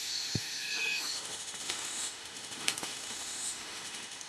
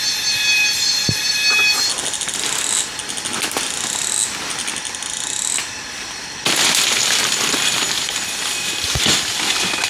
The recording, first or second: second